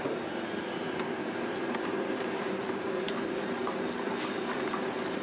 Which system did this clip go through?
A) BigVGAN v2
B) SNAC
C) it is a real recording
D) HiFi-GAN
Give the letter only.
A